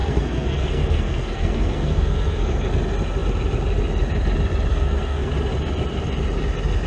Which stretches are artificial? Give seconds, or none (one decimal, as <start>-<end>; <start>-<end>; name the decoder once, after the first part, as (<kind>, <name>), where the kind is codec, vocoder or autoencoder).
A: 0.0-2.7 (codec, SNAC); 4.7-5.3